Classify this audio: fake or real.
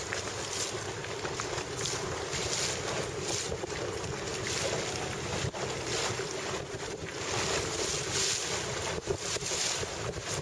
real